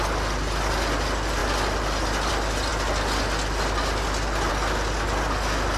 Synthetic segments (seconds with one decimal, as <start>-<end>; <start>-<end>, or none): none